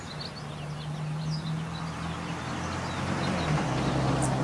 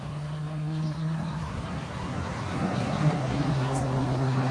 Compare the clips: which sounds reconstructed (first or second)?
second